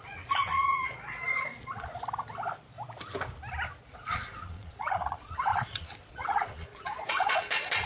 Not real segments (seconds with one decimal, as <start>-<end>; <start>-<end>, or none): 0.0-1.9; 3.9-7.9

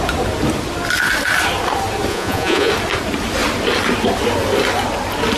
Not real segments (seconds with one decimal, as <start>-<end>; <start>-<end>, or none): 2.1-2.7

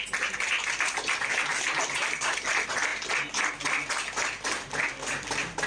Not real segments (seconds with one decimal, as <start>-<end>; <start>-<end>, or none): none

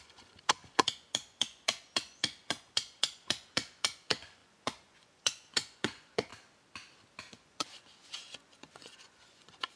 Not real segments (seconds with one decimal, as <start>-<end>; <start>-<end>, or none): 0.0-6.3; 7.3-9.8

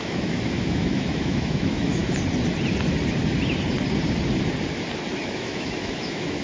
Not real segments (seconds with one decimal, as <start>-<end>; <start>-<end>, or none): 0.0-2.0; 5.2-6.4

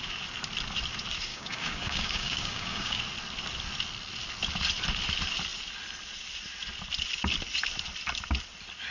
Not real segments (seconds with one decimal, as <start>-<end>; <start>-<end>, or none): 1.3-3.0